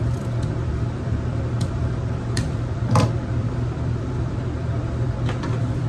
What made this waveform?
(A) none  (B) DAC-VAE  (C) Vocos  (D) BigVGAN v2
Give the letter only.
D